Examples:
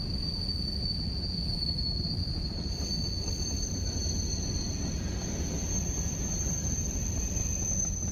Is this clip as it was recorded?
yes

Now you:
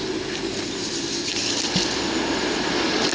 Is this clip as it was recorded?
yes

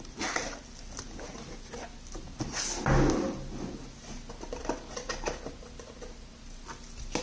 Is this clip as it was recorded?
yes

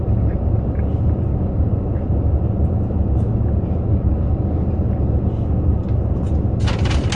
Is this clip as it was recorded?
yes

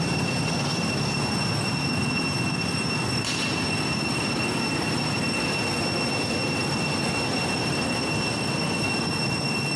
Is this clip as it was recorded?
yes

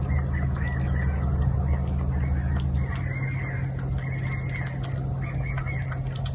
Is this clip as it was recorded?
yes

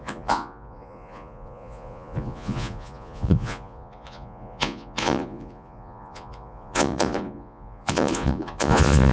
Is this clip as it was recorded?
no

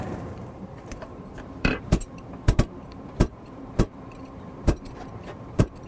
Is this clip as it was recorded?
no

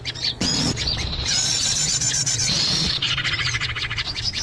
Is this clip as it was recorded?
no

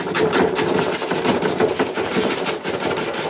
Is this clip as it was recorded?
yes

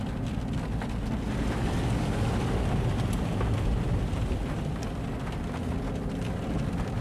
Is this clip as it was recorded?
yes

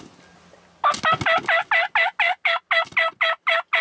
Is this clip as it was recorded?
yes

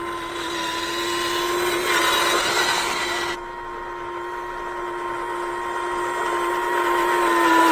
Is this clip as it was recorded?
yes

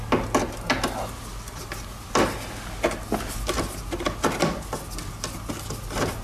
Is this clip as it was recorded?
yes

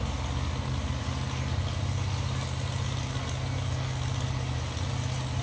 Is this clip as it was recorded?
yes